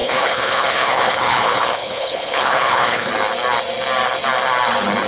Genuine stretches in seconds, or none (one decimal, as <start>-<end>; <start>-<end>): 3.1-5.1